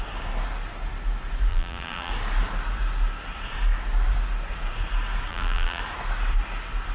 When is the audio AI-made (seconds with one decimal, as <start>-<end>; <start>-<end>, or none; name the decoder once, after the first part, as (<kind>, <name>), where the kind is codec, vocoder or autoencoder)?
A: 1.5-2.1 (vocoder, BigVGAN v2); 5.3-5.8